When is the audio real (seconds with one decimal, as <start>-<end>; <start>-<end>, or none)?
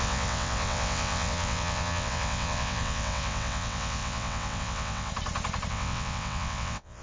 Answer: 5.1-5.7